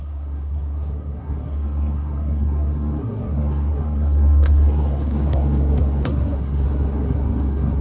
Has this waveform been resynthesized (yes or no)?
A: yes